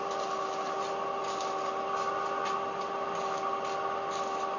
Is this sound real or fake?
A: real